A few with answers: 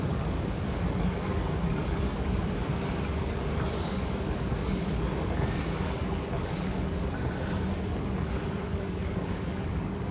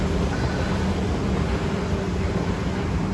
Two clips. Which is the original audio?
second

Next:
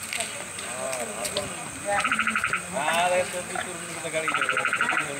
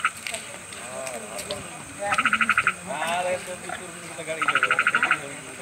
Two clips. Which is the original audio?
first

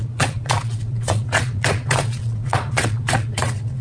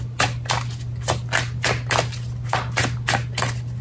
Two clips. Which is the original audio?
second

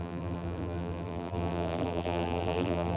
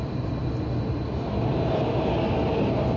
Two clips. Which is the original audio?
second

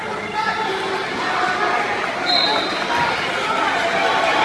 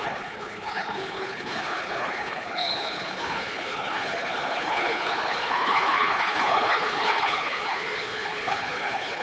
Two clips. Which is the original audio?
first